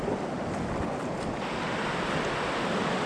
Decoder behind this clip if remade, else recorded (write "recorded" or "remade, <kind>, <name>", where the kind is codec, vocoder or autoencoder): recorded